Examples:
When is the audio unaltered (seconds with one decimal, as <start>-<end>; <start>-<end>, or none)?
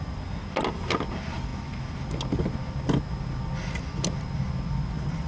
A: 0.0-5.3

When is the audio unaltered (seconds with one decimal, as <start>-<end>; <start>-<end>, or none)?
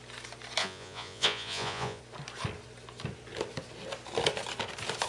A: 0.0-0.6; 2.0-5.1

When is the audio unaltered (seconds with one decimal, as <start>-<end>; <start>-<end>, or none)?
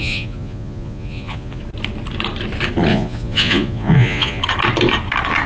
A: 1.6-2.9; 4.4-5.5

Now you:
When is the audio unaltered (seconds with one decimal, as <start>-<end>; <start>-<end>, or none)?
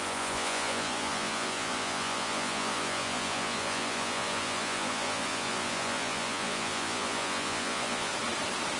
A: 8.1-8.8